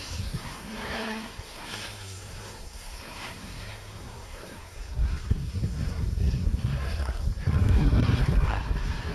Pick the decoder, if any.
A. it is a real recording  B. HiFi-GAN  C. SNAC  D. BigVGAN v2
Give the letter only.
C